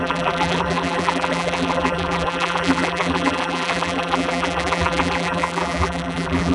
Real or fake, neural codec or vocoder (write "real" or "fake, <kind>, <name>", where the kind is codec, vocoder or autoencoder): fake, vocoder, BigVGAN v2